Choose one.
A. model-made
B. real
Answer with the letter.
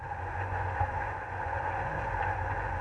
A